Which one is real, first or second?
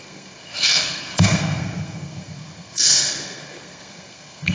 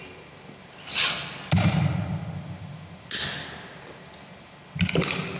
second